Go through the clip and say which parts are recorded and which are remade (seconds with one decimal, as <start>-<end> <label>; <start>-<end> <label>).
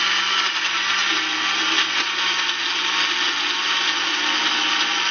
0.0-5.1 recorded